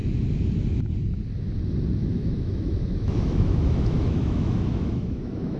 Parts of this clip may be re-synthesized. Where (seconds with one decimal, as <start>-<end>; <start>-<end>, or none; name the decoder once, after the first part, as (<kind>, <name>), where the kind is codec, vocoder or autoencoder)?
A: 2.0-5.6 (autoencoder, DAC-VAE)